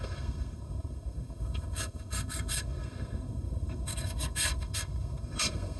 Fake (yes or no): yes